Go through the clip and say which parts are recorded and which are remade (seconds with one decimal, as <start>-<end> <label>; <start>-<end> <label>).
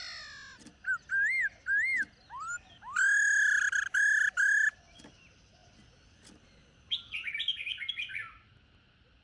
0.0-9.2 recorded